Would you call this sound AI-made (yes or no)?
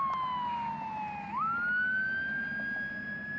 no